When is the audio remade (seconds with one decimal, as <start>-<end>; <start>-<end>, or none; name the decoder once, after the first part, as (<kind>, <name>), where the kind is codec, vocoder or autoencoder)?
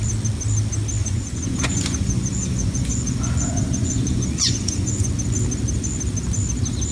1.0-5.1 (vocoder, Vocos)